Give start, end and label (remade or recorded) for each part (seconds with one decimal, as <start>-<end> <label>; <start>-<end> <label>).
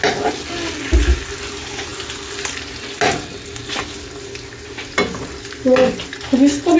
0.0-6.8 recorded